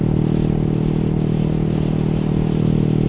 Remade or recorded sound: recorded